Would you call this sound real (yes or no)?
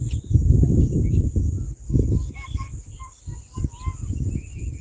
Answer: yes